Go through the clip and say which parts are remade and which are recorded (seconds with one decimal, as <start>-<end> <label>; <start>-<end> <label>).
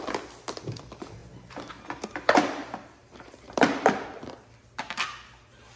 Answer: 0.0-1.2 recorded; 1.2-1.7 remade; 1.7-2.6 recorded; 2.6-4.3 remade; 4.3-5.8 recorded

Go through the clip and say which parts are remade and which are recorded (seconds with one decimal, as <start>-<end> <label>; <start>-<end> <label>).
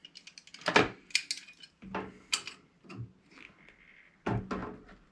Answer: 0.0-5.1 recorded